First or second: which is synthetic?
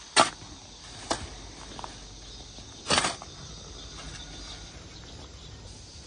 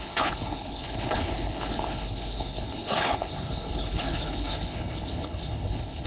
second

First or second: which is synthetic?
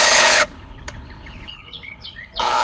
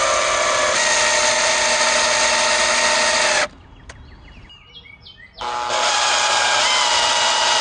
first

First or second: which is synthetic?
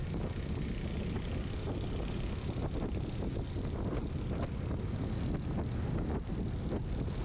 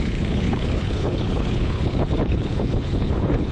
second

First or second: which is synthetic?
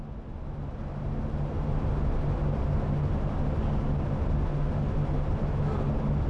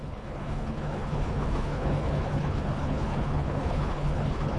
second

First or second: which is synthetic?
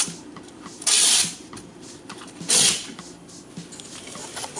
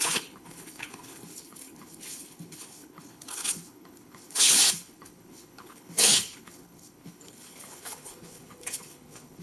second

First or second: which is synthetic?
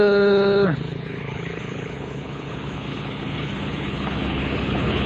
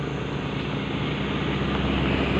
first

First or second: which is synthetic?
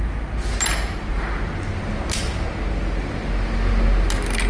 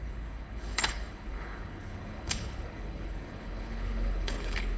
second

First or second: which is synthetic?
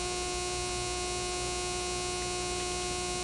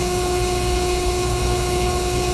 second